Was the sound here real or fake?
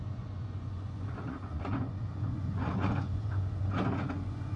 fake